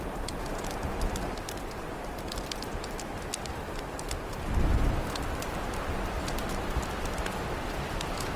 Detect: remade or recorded recorded